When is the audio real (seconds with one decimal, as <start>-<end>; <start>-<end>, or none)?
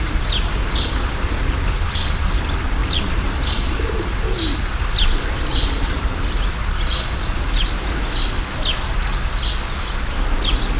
0.0-2.8; 4.6-5.5; 8.0-10.8